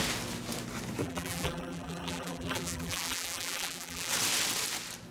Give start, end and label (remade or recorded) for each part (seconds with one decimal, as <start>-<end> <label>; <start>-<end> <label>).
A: 0.0-1.0 recorded; 1.0-4.1 remade; 4.1-5.1 recorded